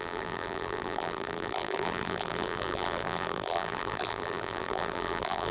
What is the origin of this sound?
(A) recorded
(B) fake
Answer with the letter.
B